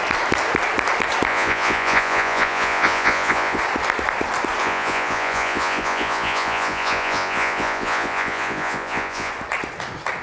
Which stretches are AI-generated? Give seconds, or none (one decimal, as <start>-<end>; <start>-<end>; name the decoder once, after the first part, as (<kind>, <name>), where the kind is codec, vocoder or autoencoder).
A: 1.3-3.6 (vocoder, Vocos); 4.6-9.3